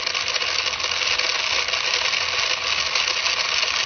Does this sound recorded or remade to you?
recorded